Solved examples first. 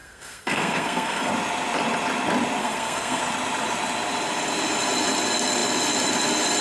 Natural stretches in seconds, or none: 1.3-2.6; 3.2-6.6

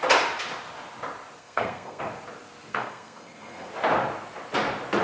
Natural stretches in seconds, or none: 0.0-1.4; 2.0-2.7; 3.7-5.0

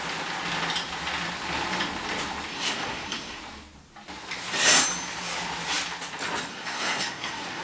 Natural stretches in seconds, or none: 0.0-2.5; 3.4-6.5